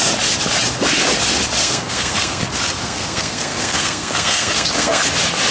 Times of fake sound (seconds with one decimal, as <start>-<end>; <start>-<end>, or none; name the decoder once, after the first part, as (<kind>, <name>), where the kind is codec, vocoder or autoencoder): 1.6-2.4 (codec, SNAC); 2.8-5.0